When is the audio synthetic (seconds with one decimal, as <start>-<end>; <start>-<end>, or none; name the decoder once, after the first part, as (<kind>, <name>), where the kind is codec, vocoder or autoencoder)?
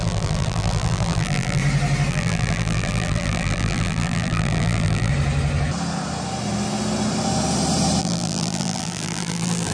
0.0-1.6 (vocoder, BigVGAN v2); 2.1-5.1; 8.0-9.7